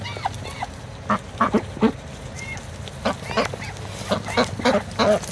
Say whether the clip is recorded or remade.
recorded